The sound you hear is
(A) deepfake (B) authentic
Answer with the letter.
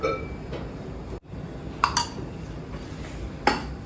B